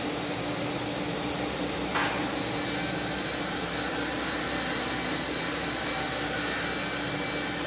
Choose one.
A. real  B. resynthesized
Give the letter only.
A